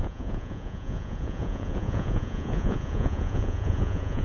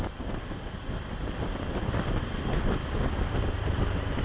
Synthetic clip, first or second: first